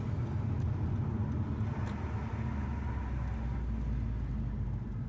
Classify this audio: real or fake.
real